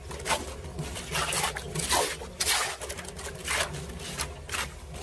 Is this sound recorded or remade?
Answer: recorded